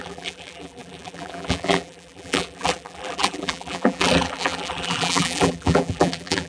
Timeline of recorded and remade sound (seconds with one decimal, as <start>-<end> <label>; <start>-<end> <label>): 0.0-6.5 remade